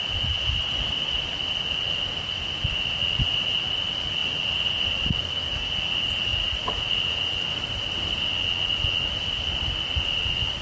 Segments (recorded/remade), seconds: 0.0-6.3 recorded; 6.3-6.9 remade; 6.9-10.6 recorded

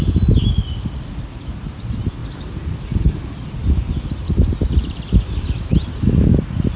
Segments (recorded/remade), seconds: 0.0-6.8 recorded

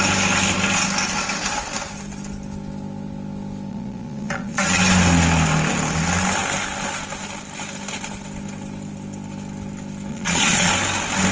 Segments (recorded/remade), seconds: 0.0-3.7 recorded; 3.7-4.8 remade; 4.8-10.1 recorded; 10.1-10.7 remade; 10.7-11.3 recorded

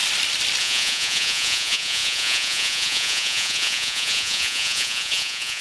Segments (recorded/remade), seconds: 0.0-0.6 recorded; 0.6-5.6 remade

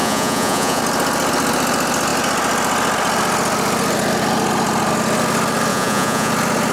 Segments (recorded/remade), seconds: 0.0-0.8 remade; 0.8-5.7 recorded; 5.7-6.3 remade; 6.3-6.7 recorded

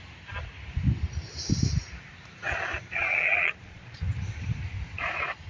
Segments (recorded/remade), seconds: 0.0-3.0 recorded; 3.0-3.9 remade; 3.9-5.5 recorded